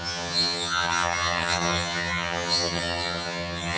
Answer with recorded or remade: remade